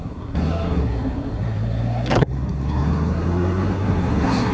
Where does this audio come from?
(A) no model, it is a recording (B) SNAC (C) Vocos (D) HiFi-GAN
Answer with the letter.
B